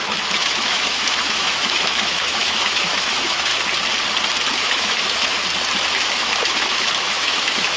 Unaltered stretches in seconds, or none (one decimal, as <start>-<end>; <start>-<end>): 3.5-4.6; 5.4-6.0